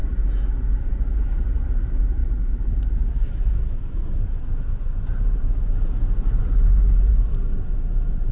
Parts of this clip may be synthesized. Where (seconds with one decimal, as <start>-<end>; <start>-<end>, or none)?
0.8-8.3